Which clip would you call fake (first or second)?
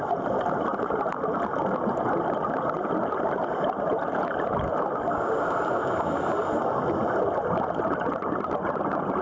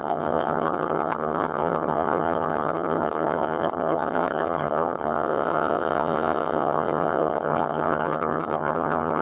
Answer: second